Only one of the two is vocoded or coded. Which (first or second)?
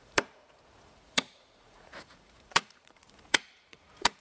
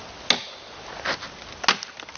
first